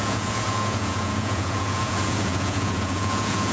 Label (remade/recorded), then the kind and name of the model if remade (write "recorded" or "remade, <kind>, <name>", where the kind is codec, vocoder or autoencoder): remade, vocoder, Vocos